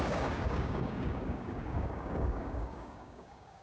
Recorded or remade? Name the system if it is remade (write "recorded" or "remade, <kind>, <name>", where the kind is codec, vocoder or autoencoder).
remade, codec, DAC